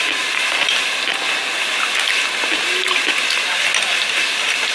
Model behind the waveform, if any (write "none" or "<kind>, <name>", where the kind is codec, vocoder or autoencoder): none